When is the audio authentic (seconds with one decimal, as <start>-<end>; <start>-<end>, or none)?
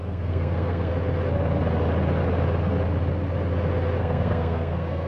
0.9-4.0